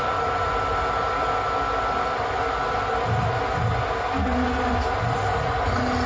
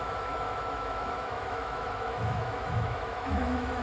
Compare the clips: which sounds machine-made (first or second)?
second